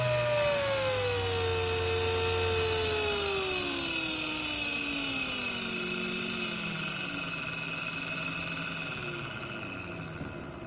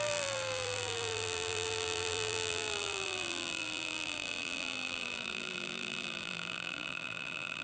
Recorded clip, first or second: first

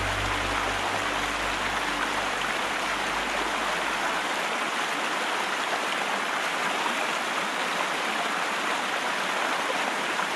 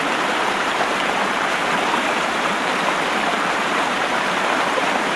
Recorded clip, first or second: first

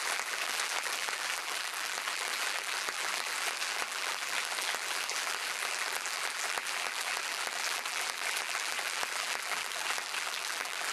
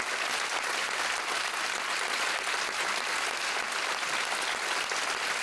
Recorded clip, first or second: second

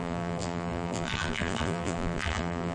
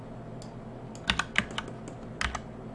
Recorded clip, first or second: second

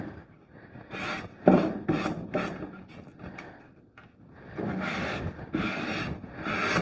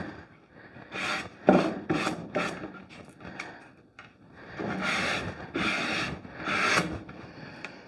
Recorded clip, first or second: first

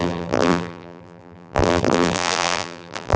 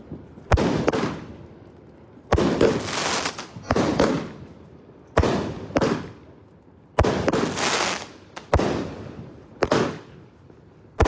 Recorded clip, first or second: second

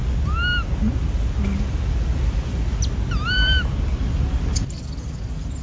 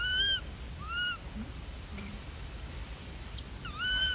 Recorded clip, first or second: first